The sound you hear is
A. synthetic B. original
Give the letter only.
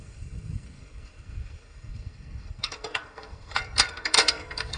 A